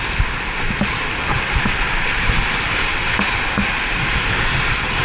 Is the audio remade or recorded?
recorded